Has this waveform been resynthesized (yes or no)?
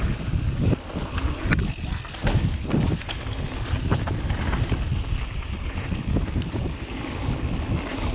no